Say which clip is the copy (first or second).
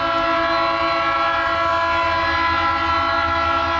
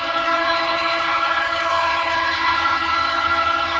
second